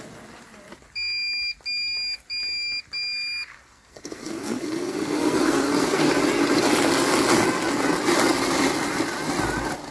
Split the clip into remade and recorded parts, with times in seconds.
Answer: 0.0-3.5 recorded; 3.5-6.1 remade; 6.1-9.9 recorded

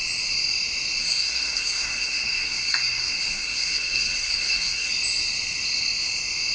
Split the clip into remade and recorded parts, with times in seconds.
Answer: 0.0-1.0 recorded; 1.0-4.9 remade; 4.9-6.5 recorded

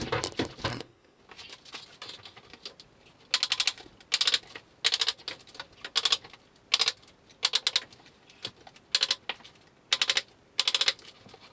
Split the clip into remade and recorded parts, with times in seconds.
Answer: 0.0-0.7 recorded; 0.7-1.2 remade; 1.2-11.5 recorded

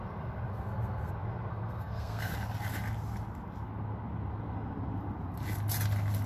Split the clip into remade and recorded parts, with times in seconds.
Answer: 0.0-0.5 recorded; 0.5-1.1 remade; 1.1-1.5 recorded; 1.5-2.3 remade; 2.3-6.3 recorded

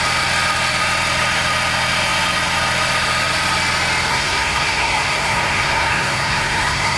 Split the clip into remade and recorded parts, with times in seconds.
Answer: 0.0-4.1 recorded; 4.1-7.0 remade

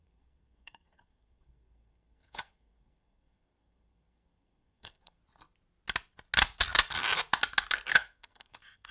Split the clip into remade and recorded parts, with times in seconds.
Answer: 0.0-5.2 remade; 5.2-7.9 recorded; 7.9-8.9 remade

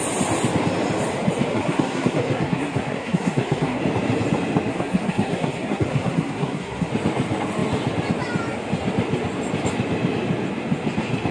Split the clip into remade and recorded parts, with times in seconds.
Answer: 0.0-1.5 recorded; 1.5-3.8 remade; 3.8-4.7 recorded; 4.7-6.9 remade; 6.9-11.3 recorded